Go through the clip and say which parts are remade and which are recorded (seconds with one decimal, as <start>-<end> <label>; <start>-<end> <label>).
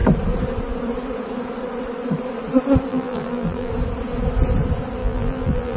0.0-2.9 recorded; 2.9-3.7 remade; 3.7-5.0 recorded; 5.0-5.8 remade